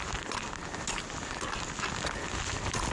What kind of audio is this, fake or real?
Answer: real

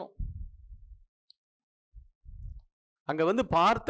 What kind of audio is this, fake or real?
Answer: real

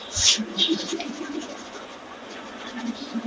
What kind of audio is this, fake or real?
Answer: fake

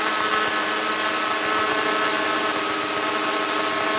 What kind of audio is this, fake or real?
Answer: real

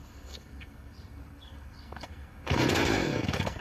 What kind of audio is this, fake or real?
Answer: fake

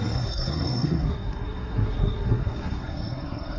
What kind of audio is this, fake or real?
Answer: fake